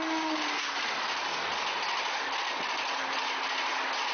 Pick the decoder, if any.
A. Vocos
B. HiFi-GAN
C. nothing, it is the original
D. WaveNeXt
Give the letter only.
C